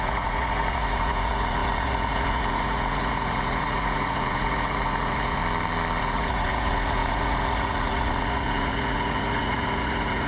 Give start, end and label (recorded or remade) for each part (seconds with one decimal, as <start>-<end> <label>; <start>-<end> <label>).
0.0-5.4 remade; 5.4-6.0 recorded; 6.0-10.3 remade